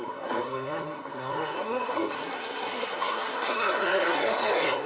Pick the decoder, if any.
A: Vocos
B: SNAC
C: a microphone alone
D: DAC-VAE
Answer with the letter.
B